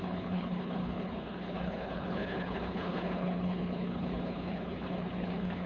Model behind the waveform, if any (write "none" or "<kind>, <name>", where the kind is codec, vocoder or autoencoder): codec, HILCodec